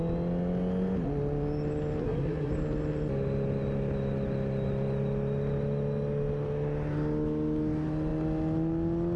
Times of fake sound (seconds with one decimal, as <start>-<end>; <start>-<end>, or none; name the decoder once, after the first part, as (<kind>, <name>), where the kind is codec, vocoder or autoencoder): 2.0-2.5 (codec, SNAC)